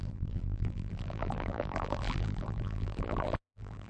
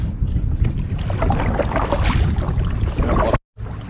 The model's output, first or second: first